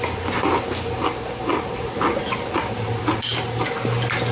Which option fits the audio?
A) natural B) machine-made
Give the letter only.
A